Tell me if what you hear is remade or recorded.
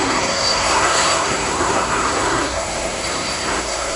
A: remade